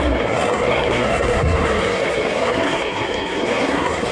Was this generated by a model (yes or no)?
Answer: yes